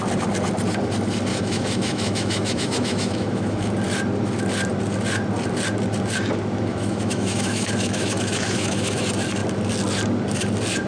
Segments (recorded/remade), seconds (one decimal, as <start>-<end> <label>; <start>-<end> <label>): 0.0-1.3 recorded; 1.3-3.7 remade; 3.7-6.7 recorded; 6.7-9.0 remade; 9.0-10.9 recorded